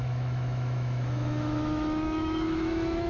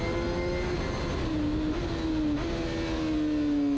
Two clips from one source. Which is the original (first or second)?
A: second